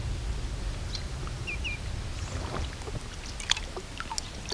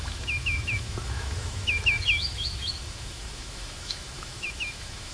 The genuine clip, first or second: first